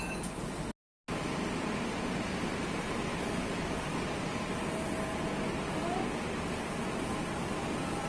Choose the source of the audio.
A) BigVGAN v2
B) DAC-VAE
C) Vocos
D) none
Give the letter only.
D